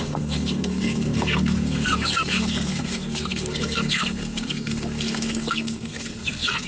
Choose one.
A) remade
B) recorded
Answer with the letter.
A